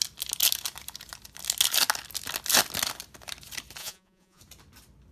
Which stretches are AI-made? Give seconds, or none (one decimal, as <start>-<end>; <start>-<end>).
3.8-4.4